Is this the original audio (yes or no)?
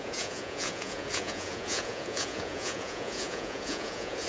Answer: no